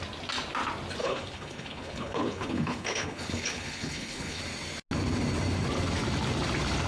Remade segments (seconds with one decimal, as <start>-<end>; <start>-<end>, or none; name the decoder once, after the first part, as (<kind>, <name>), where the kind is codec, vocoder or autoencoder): 1.0-4.4 (codec, HILCodec)